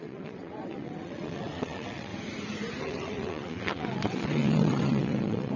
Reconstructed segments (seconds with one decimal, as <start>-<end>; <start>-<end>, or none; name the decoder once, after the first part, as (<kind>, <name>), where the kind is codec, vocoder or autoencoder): 0.0-2.1 (vocoder, WaveNeXt); 2.8-5.6